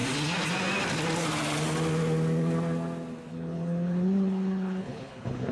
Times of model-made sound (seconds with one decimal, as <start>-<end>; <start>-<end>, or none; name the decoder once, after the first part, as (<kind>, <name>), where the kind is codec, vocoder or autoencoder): 3.3-5.5 (codec, HILCodec)